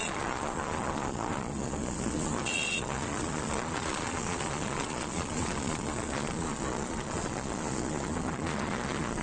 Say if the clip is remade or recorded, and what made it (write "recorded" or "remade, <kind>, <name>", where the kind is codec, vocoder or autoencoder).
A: remade, vocoder, Vocos